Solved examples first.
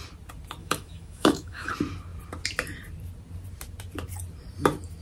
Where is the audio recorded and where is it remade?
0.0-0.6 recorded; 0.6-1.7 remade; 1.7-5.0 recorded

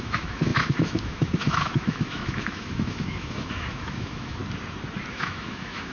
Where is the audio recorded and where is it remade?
0.0-4.4 remade; 4.4-5.1 recorded; 5.1-5.9 remade

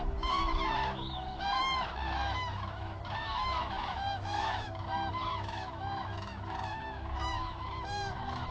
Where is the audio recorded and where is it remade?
0.0-8.5 remade